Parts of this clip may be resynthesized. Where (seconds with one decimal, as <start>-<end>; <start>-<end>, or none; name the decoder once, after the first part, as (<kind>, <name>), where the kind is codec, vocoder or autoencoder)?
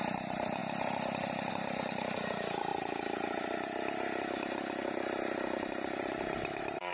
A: 0.0-0.6 (vocoder, BigVGAN v2); 1.5-2.7; 6.1-6.9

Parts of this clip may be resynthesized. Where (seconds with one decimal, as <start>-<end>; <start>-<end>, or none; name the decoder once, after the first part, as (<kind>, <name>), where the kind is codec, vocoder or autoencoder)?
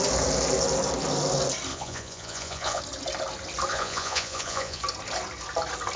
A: 1.7-2.8 (vocoder, Vocos); 3.7-4.8